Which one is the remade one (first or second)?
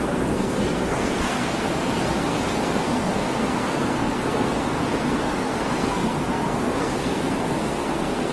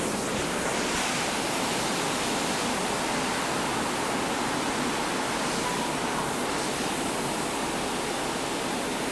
first